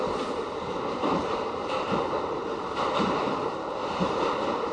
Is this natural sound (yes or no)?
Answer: no